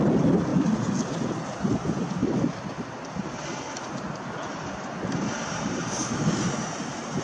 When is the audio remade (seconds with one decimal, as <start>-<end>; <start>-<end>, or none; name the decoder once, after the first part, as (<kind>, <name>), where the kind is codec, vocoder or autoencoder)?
none